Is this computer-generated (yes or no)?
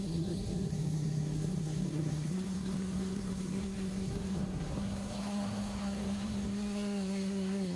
yes